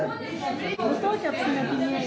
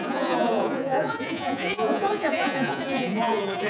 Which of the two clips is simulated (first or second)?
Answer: second